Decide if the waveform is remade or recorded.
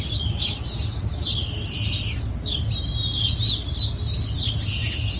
recorded